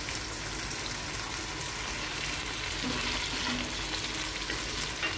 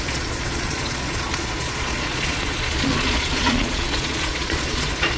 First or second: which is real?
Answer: first